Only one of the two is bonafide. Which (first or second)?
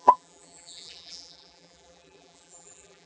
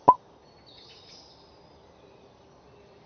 second